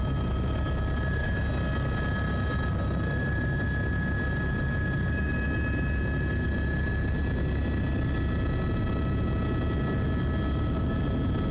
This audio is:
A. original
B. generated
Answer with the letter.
A